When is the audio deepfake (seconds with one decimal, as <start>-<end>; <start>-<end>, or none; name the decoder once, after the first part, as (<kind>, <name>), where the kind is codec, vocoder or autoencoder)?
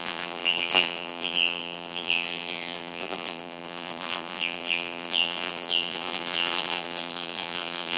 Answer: 0.0-8.0 (vocoder, BigVGAN v2)